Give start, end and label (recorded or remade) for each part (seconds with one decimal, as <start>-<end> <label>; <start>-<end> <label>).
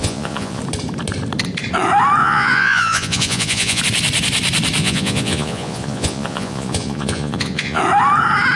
0.0-0.6 remade; 0.6-2.2 recorded; 2.2-3.8 remade; 3.8-4.8 recorded; 4.8-7.8 remade; 7.8-8.6 recorded